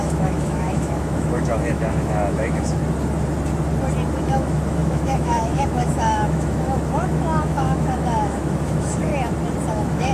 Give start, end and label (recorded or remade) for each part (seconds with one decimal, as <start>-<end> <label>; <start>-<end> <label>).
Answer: 0.0-2.8 remade; 2.8-4.2 recorded; 4.2-9.1 remade; 9.1-9.7 recorded; 9.7-10.1 remade